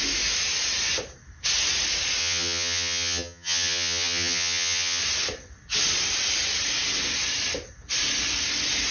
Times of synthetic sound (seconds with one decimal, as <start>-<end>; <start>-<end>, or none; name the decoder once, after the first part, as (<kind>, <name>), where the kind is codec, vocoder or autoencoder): 2.2-5.0 (vocoder, HiFi-GAN)